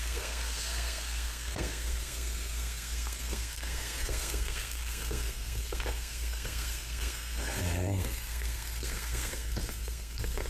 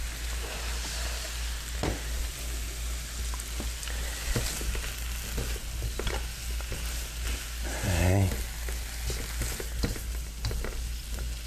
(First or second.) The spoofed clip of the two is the first